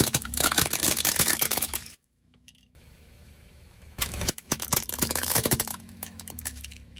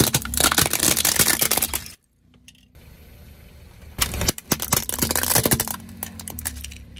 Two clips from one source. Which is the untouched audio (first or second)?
second